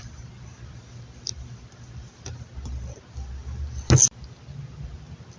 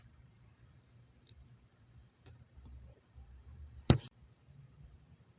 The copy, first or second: second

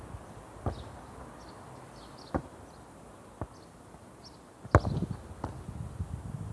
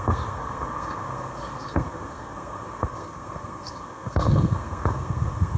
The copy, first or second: second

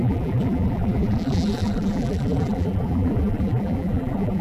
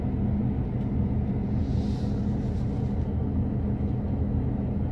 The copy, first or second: first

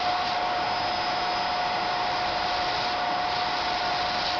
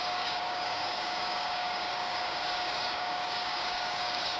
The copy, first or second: second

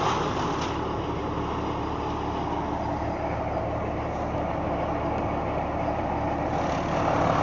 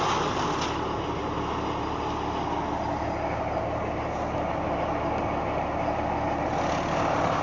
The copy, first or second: first